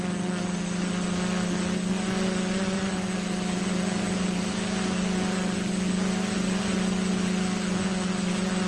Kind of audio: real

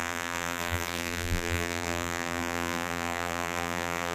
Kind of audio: fake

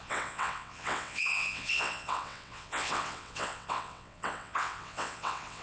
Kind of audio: fake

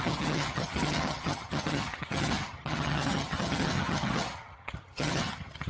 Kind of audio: fake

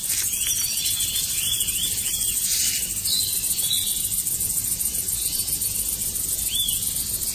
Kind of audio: real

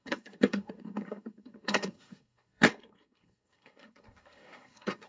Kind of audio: fake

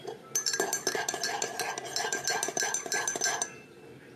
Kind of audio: real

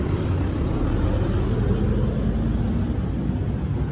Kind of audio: real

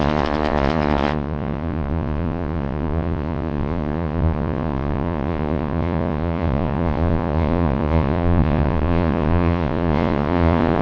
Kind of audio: fake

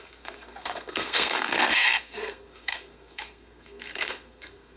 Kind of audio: fake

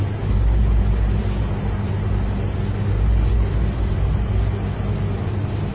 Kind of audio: real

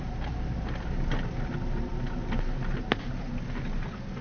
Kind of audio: real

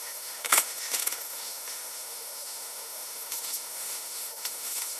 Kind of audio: fake